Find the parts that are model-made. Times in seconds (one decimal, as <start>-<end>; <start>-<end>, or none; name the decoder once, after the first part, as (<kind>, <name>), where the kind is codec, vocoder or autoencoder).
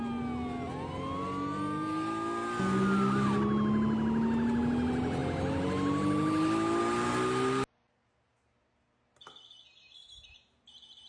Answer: none